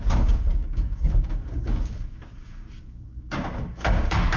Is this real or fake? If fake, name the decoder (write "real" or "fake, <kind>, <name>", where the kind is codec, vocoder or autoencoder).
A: fake, codec, DAC